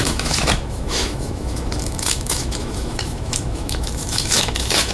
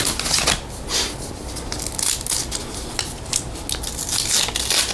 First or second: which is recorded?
second